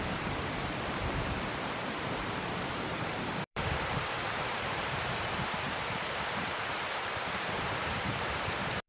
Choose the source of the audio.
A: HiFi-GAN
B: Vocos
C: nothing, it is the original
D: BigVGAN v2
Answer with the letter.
D